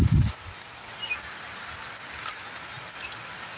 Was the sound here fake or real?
real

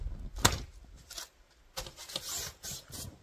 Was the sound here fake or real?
real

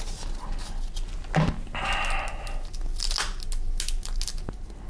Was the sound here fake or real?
real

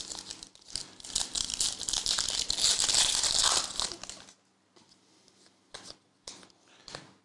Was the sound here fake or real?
real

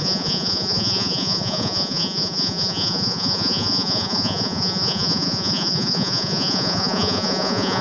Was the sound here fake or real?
fake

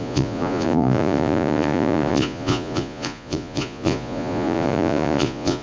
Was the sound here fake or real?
fake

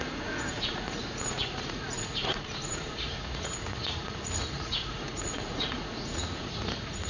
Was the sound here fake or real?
fake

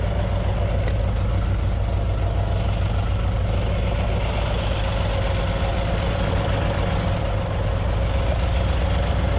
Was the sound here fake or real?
real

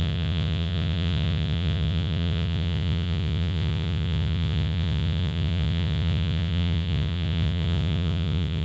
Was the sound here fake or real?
fake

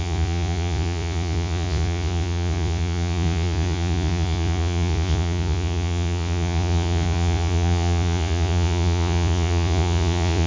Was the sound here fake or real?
fake